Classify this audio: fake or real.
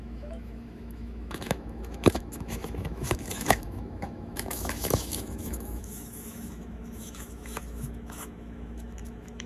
fake